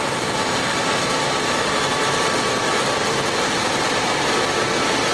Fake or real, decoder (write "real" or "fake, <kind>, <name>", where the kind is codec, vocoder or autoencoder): fake, vocoder, BigVGAN v2